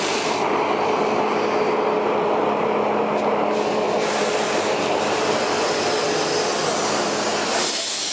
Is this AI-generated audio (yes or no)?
no